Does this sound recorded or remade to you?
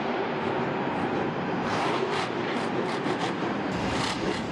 remade